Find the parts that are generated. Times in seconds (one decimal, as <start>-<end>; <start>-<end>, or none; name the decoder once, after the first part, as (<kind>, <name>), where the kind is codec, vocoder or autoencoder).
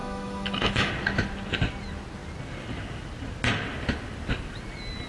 0.0-0.9 (autoencoder, DAC-VAE)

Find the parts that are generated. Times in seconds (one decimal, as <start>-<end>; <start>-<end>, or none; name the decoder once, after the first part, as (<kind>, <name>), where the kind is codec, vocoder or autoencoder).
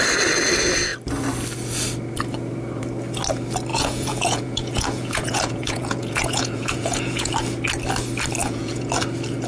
3.7-7.3 (vocoder, Vocos); 8.4-8.9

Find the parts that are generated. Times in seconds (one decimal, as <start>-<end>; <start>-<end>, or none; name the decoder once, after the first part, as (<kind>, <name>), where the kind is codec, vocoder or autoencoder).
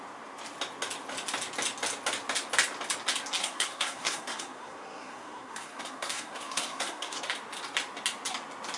3.4-7.2 (codec, SNAC)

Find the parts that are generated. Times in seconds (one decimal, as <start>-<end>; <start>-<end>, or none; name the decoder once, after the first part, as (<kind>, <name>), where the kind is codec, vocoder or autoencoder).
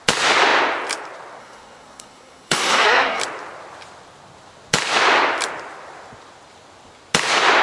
1.4-3.2 (codec, SNAC)